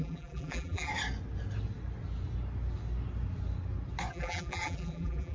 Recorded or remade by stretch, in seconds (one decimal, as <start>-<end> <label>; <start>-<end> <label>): 0.0-0.9 remade; 0.9-4.1 recorded; 4.1-5.3 remade